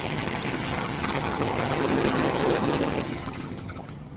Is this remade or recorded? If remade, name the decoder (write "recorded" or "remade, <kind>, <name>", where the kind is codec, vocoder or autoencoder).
remade, vocoder, HiFi-GAN